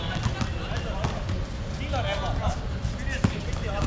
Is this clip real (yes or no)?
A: yes